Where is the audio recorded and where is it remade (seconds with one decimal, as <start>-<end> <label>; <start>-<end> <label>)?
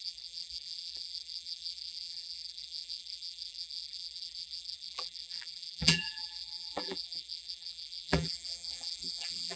0.0-9.6 remade